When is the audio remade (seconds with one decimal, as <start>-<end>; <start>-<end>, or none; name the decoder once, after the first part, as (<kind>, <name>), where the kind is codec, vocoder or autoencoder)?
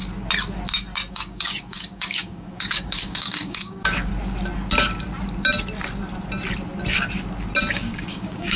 1.1-4.1 (codec, DAC); 7.7-8.6